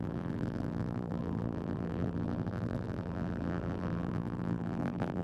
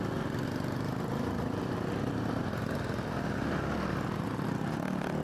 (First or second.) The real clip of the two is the second